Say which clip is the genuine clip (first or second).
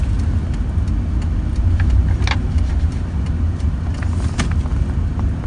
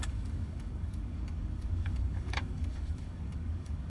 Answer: first